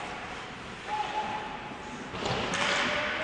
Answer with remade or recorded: recorded